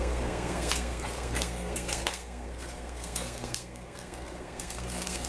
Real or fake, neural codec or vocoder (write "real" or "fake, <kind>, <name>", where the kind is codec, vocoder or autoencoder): fake, codec, SNAC